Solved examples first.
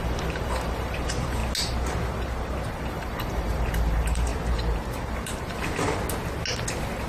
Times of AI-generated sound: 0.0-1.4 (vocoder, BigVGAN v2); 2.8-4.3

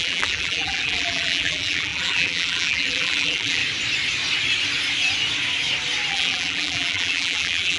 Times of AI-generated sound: 0.0-3.6 (vocoder, BigVGAN v2); 6.1-7.8